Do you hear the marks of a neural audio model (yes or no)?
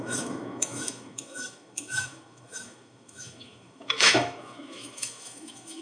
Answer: yes